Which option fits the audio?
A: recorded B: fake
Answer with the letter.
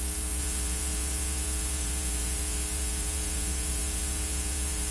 B